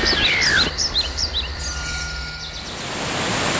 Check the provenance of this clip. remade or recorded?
recorded